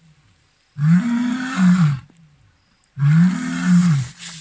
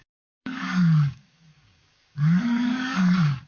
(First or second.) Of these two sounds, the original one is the first